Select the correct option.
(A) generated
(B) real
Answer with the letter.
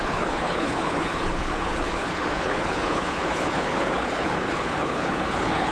A